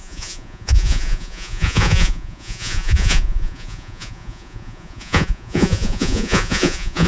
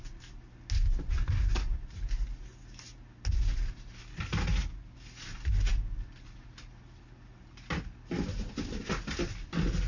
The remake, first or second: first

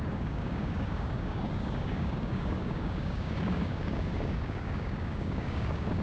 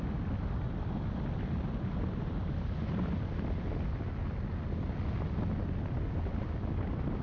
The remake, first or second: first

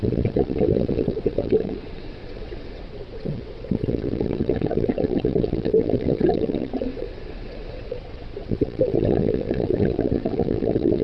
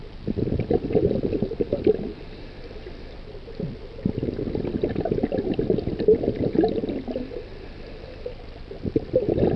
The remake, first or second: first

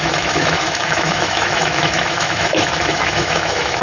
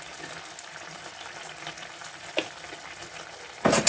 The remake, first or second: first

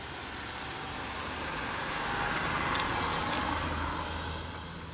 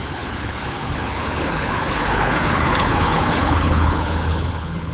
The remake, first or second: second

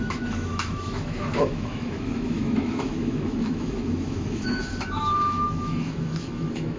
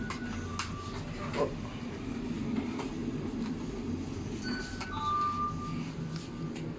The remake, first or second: first